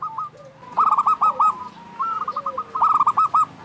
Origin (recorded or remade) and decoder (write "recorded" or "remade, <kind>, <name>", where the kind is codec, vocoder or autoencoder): recorded